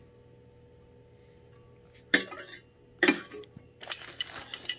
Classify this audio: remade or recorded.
recorded